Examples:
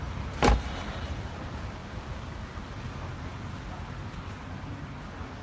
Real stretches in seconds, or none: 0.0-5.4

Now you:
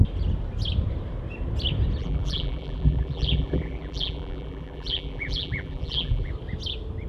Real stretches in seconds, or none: 0.0-2.0; 6.3-7.1

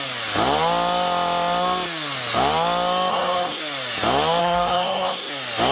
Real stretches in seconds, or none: 0.0-3.1; 3.6-4.4; 5.3-5.7

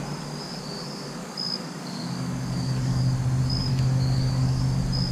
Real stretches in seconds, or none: 0.0-1.2; 3.0-3.7; 4.6-5.1

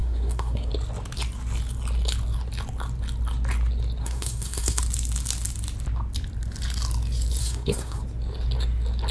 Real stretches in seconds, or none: 0.7-4.0; 4.8-7.4; 8.0-9.1

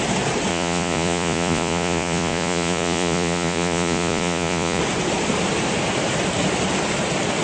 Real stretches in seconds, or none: 0.0-0.5; 4.8-7.4

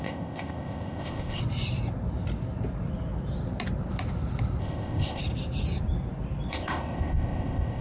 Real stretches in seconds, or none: 1.4-4.6; 5.2-6.5

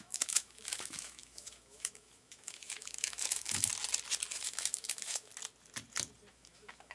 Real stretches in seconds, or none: 3.7-4.3; 5.3-6.3